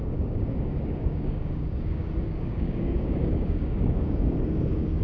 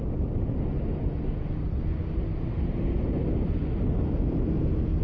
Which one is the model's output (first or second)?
first